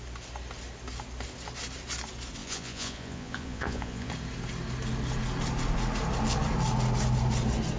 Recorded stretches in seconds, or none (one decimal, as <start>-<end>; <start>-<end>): 0.0-2.4; 4.1-7.8